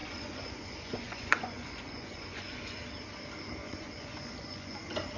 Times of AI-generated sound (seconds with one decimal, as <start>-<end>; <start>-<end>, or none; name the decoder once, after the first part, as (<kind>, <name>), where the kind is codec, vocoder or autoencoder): 0.0-2.8 (vocoder, Vocos); 3.6-5.2

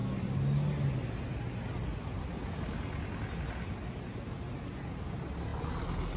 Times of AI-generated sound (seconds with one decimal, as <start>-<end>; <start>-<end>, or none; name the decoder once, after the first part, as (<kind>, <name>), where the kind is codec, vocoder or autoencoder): none

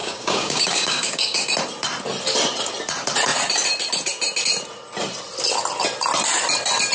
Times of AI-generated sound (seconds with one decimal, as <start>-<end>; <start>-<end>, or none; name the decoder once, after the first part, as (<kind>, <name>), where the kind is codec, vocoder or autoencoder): 0.0-1.5 (codec, DAC)

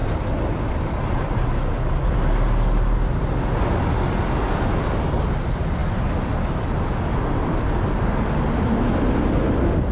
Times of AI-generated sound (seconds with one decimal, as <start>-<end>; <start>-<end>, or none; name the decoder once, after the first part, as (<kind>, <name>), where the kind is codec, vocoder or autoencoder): none

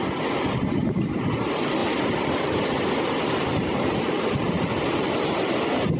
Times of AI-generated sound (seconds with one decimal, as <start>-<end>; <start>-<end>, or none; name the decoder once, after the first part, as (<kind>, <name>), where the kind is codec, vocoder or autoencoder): 1.8-4.3 (vocoder, BigVGAN v2)